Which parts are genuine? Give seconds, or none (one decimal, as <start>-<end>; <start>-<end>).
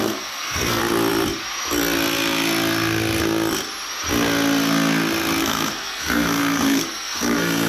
0.8-5.4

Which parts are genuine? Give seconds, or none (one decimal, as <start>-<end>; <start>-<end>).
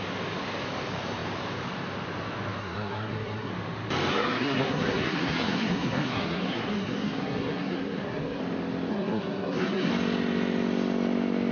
0.0-2.6; 3.5-4.1; 8.4-8.9; 9.9-11.5